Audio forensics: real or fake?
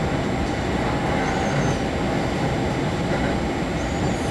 real